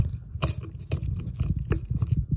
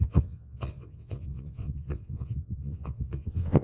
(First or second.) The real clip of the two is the first